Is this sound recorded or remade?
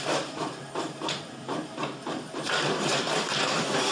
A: remade